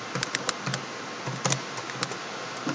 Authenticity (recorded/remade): recorded